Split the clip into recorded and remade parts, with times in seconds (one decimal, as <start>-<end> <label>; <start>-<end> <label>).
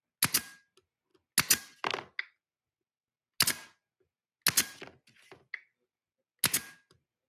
0.0-7.3 recorded